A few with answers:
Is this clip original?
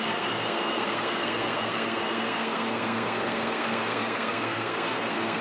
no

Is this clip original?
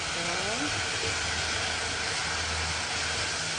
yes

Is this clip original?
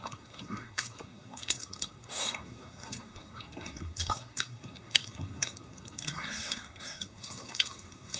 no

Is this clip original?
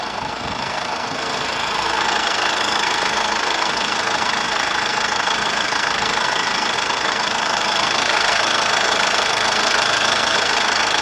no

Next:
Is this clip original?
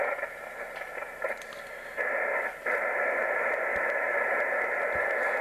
yes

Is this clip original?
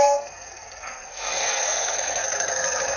no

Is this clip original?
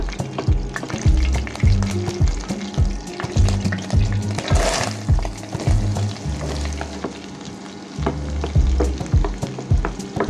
yes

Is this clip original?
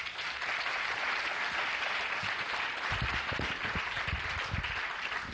yes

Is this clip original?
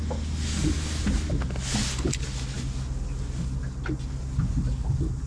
yes